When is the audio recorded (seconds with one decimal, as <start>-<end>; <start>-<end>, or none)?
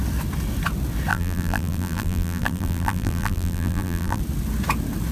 0.0-1.1; 4.2-5.1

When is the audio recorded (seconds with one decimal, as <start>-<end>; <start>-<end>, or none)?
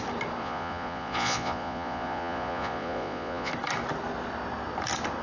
0.0-0.4; 3.5-5.2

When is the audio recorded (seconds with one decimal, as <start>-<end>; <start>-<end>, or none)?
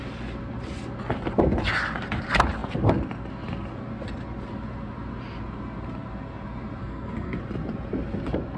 0.0-6.8; 7.4-8.6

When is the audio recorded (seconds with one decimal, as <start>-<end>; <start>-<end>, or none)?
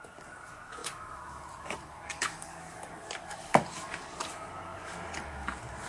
none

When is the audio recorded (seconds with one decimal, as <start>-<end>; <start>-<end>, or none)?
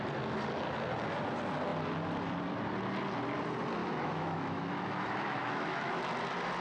0.0-3.8; 5.9-6.6